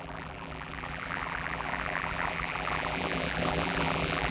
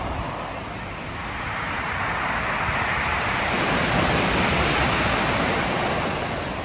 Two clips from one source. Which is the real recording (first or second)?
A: second